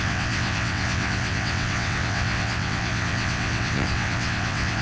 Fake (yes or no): yes